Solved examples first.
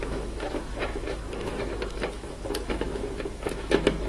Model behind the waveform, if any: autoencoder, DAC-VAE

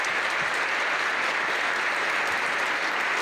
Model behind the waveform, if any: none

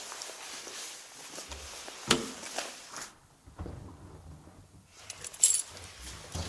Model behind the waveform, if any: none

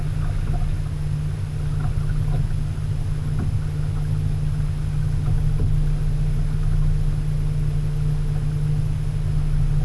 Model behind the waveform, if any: none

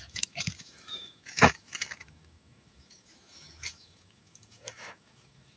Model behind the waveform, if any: autoencoder, DAC-VAE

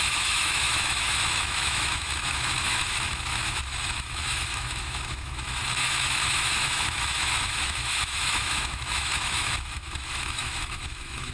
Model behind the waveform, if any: autoencoder, DAC-VAE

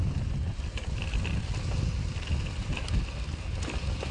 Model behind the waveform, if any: none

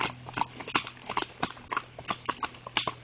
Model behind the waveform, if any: none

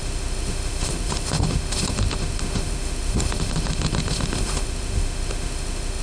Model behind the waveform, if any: autoencoder, DAC-VAE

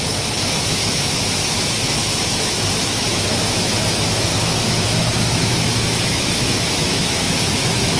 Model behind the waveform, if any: autoencoder, DAC-VAE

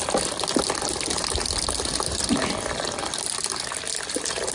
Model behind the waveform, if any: none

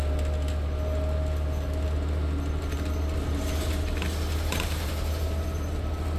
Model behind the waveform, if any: none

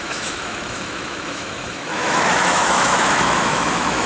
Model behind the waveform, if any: autoencoder, DAC-VAE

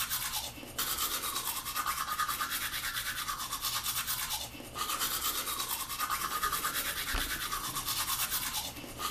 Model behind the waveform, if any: none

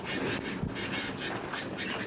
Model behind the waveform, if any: none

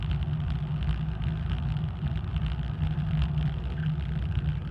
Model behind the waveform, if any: none